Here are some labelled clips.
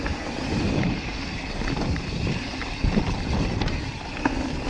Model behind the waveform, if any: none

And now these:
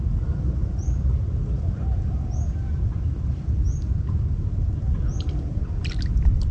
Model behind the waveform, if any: none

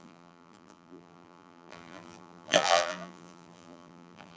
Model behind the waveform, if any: vocoder, BigVGAN v2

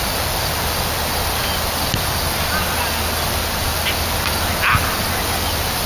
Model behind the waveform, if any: none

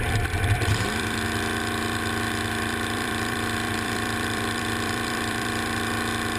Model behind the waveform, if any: vocoder, BigVGAN v2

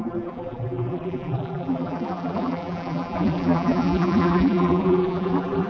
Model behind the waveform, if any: vocoder, BigVGAN v2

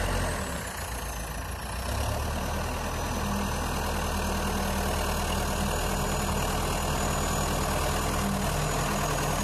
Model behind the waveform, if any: none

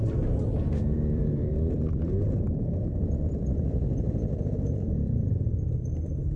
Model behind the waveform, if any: vocoder, BigVGAN v2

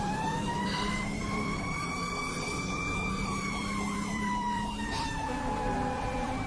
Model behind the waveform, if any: vocoder, BigVGAN v2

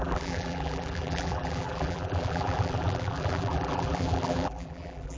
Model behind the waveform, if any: vocoder, BigVGAN v2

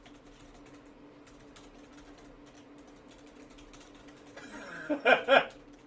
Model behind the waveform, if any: none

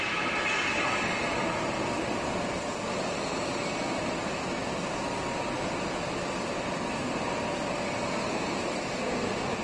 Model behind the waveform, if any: none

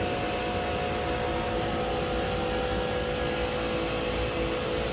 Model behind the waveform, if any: none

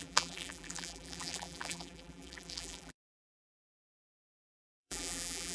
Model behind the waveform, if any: vocoder, BigVGAN v2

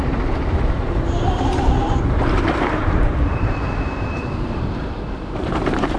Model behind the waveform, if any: vocoder, BigVGAN v2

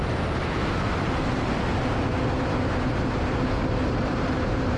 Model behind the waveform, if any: vocoder, BigVGAN v2